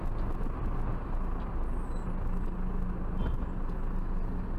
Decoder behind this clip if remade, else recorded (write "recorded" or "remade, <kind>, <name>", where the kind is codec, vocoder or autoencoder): recorded